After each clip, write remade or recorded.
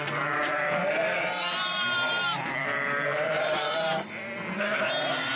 remade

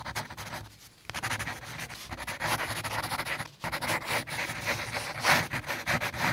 recorded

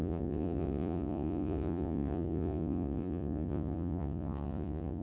remade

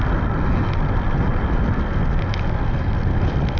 recorded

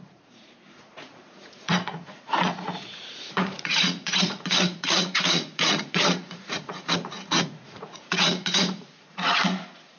remade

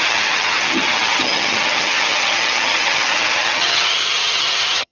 remade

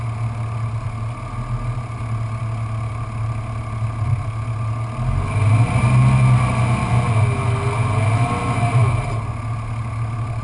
recorded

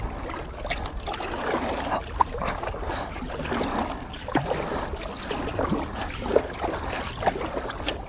recorded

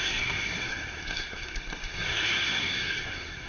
remade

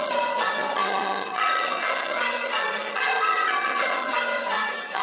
remade